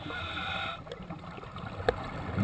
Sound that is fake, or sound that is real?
real